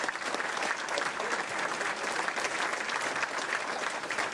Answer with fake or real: real